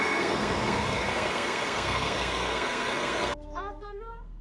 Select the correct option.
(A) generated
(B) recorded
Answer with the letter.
A